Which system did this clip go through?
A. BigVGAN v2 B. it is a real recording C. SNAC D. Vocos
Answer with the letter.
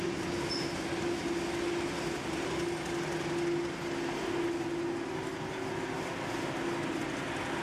B